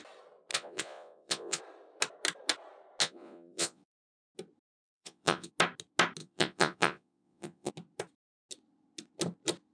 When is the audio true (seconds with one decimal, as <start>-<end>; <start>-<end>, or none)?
0.0-0.5; 1.6-3.0; 4.0-4.8; 5.5-6.2; 7.7-9.7